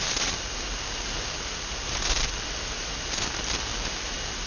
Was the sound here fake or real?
real